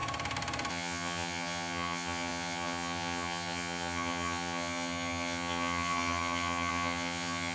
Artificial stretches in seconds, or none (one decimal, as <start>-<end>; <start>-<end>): 0.7-7.5